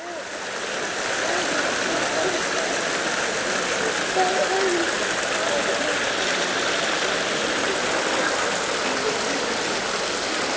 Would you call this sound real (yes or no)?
yes